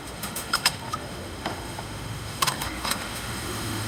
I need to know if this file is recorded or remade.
remade